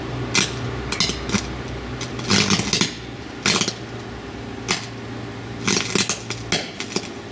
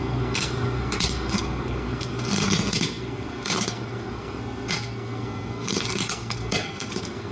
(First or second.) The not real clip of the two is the second